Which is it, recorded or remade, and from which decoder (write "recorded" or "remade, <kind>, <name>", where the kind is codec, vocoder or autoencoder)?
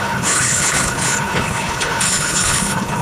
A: remade, codec, HILCodec